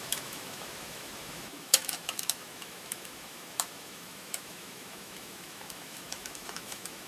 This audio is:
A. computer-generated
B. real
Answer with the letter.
A